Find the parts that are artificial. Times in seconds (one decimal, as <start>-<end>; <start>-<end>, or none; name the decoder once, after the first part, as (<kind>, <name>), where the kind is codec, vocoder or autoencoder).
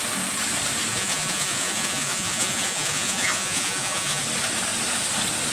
0.9-4.2 (vocoder, Vocos)